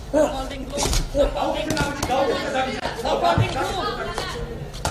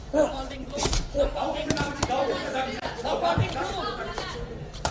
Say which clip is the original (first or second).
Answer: first